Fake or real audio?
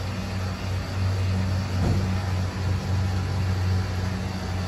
real